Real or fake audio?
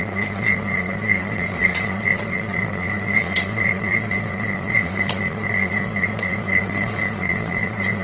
fake